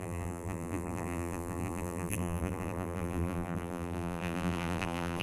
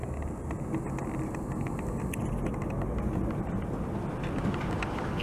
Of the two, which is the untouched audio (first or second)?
second